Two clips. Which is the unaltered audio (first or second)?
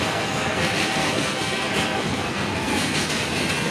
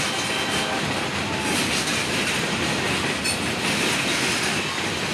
second